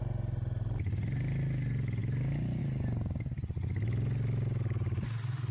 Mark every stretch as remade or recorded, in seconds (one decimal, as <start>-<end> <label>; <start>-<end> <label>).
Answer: 0.0-5.5 recorded